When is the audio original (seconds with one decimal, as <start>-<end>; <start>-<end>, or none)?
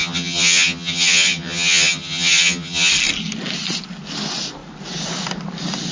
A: 2.9-5.9